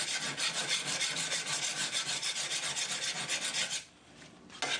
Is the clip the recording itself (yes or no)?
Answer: yes